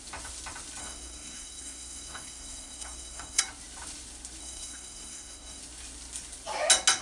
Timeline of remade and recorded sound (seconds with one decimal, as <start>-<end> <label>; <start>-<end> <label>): 0.0-0.8 recorded; 0.8-3.4 remade; 3.4-4.4 recorded; 4.4-5.6 remade; 5.6-7.0 recorded